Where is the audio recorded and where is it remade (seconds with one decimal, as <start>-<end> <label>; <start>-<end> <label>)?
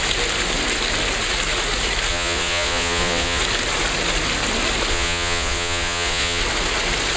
0.0-2.1 recorded; 2.1-3.4 remade; 3.4-4.9 recorded; 4.9-6.4 remade; 6.4-7.2 recorded